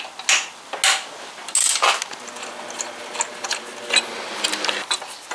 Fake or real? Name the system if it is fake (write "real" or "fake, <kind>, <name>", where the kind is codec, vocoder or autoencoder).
real